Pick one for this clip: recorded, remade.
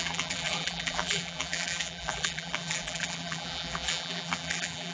remade